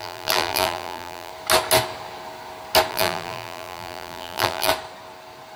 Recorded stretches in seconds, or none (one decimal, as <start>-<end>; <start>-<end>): 1.3-2.9; 4.7-5.6